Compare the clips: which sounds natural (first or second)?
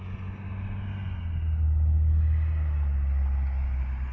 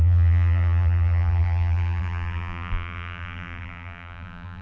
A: first